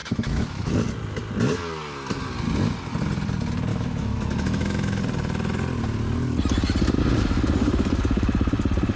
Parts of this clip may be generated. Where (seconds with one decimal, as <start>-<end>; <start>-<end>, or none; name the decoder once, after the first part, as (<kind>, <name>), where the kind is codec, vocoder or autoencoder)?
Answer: 0.0-0.7 (autoencoder, DAC-VAE); 3.7-5.0